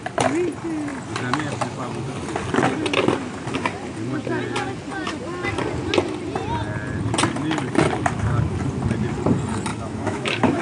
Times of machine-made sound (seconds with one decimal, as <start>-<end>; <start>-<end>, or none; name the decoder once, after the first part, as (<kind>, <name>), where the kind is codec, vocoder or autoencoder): 9.7-10.6 (autoencoder, DAC-VAE)